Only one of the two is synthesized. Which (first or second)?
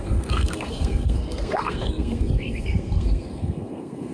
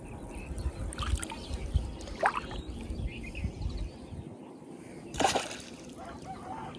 first